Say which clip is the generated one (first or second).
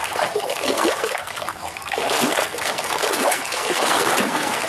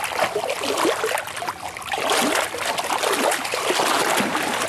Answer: first